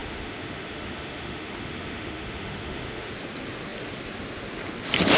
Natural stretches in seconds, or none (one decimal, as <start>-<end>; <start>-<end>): 3.1-5.2

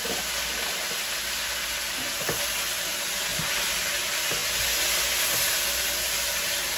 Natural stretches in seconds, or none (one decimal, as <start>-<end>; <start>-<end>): 0.0-3.3; 3.9-6.8

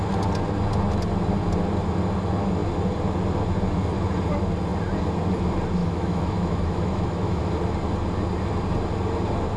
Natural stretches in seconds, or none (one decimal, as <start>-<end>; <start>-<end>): 0.0-5.8; 7.4-9.6

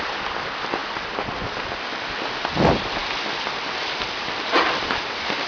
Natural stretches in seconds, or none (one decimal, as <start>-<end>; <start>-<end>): 0.0-5.5